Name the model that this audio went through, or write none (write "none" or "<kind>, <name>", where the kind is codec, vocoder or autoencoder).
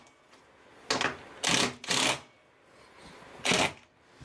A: none